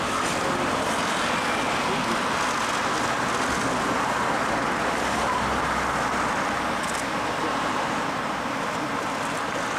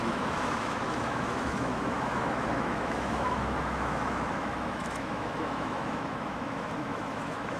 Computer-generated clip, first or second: second